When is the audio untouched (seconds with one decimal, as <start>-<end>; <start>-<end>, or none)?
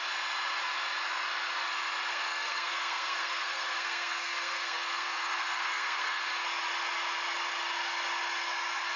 0.0-2.1; 6.2-9.0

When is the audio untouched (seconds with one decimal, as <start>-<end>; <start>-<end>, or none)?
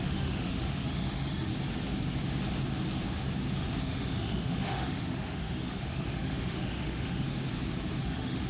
1.5-3.8; 7.4-8.0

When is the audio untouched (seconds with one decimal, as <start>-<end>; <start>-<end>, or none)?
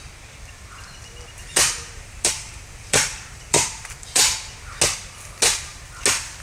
0.0-1.5; 4.2-6.4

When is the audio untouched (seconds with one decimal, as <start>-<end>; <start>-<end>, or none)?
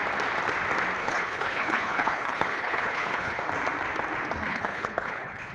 0.0-1.0; 3.4-4.5